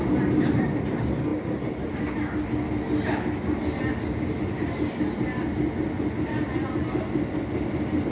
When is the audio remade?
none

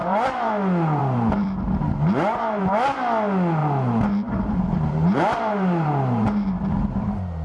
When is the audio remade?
0.0-0.5 (vocoder, BigVGAN v2); 1.0-2.6; 3.6-6.5

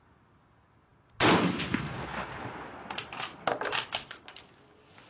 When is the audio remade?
none

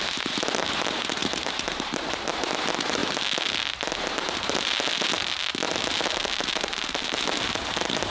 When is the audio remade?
none

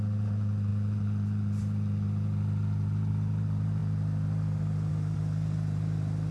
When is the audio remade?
none

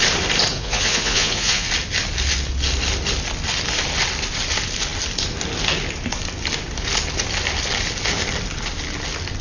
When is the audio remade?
0.5-1.7 (vocoder, Vocos)